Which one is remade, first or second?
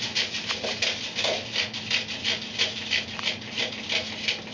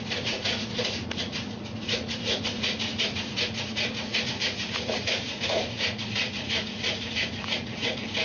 second